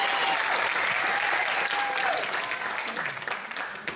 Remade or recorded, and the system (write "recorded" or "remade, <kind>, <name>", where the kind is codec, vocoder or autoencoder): recorded